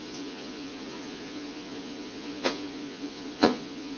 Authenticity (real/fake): fake